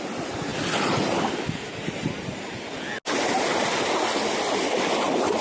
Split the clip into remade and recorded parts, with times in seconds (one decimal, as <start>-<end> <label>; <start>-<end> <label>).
0.0-5.4 recorded